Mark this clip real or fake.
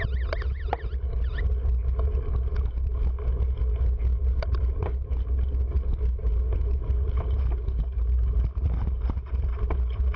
real